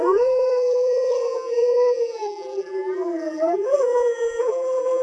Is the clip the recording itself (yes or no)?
no